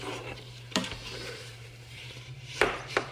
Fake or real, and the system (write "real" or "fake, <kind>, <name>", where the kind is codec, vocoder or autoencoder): fake, vocoder, BigVGAN v2